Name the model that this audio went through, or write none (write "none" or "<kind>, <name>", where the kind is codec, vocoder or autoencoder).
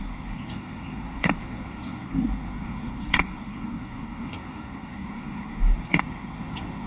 codec, SNAC